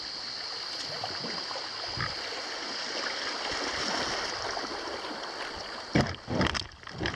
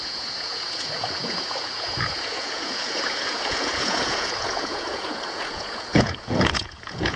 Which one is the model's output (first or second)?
second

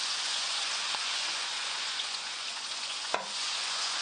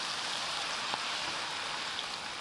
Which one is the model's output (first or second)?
first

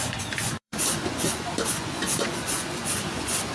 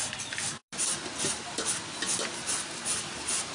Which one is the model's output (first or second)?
first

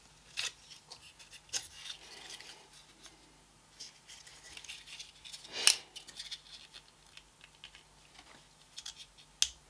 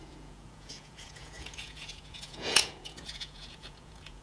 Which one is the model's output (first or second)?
second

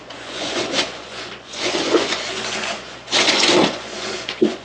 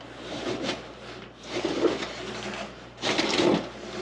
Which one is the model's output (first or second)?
first